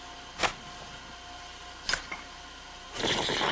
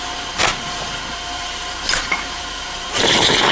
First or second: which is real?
first